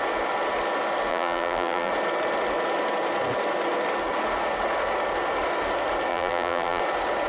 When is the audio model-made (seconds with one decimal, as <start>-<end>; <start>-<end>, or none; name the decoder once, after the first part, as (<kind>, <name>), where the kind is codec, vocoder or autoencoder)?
1.1-1.9 (vocoder, BigVGAN v2); 6.1-6.8